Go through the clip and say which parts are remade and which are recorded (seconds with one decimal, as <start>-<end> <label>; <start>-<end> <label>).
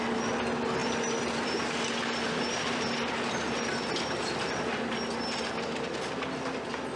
0.0-7.0 recorded